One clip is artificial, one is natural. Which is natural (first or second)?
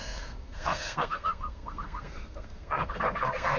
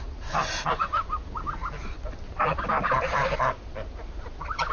second